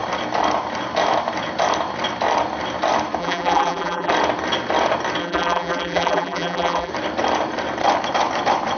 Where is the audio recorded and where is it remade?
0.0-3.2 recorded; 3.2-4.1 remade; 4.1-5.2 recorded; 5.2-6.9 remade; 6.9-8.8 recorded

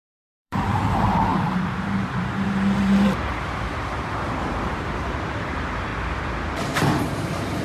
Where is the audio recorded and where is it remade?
0.0-5.9 remade; 5.9-6.5 recorded; 6.5-7.6 remade